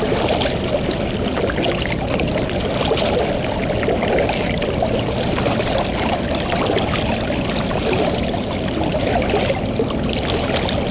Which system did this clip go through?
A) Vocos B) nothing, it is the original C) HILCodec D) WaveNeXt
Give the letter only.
B